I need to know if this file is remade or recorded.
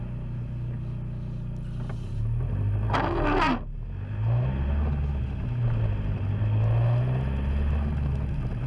recorded